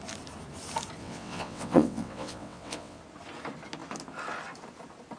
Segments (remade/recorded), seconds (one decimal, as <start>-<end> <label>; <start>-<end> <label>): 0.0-1.0 recorded; 1.0-3.0 remade; 3.0-5.2 recorded